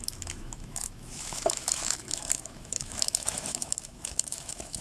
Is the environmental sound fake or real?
fake